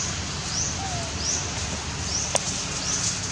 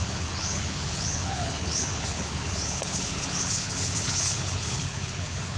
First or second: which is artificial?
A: second